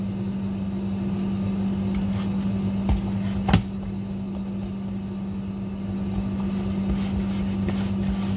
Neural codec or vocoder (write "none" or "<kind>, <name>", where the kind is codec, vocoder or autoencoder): none